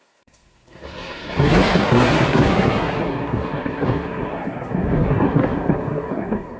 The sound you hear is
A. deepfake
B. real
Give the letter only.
A